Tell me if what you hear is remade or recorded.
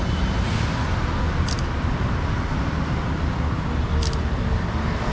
recorded